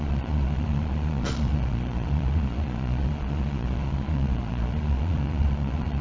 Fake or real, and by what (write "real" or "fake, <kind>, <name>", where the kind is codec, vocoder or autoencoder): fake, vocoder, Vocos